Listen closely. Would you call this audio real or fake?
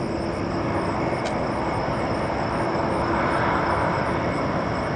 real